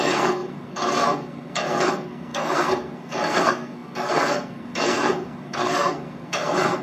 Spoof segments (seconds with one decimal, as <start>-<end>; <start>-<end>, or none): 0.0-6.8

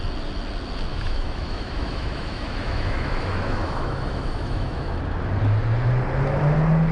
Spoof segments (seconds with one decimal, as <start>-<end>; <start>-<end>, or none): 0.9-5.0